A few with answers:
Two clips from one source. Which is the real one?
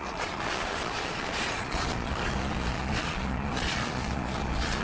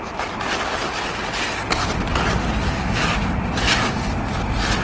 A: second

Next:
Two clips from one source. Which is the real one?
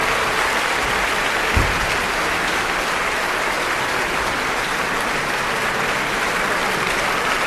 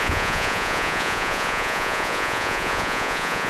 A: first